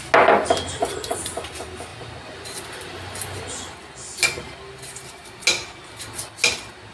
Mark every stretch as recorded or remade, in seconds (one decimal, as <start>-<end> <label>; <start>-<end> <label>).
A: 0.0-6.9 recorded